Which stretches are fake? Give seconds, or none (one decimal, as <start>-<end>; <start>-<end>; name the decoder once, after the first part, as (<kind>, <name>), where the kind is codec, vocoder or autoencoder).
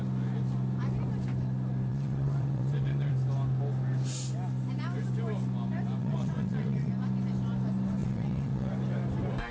1.9-3.1 (vocoder, WaveNeXt); 6.0-6.9; 8.0-8.7